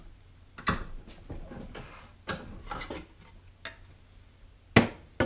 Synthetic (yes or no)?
no